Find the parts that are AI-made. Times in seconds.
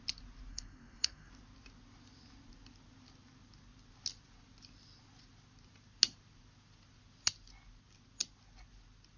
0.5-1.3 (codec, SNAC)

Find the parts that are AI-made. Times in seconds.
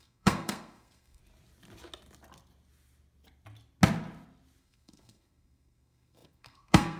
0.0-1.2 (codec, SNAC); 4.6-7.0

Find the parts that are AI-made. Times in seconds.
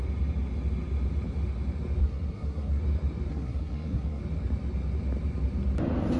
2.0-2.8 (codec, SNAC); 3.3-4.2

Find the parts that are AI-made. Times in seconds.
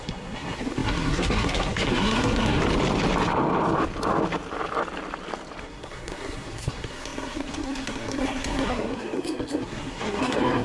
0.0-2.6 (codec, SNAC); 5.6-10.6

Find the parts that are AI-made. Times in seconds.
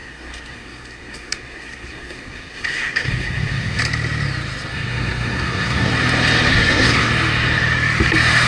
0.0-3.8 (codec, SNAC); 4.7-5.9; 6.5-7.1